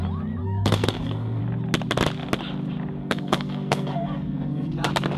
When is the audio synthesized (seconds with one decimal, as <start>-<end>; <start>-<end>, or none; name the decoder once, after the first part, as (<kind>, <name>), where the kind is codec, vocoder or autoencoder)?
0.4-1.4 (codec, SNAC); 3.0-4.7